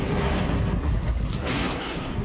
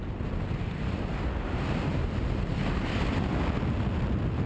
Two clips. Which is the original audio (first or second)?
second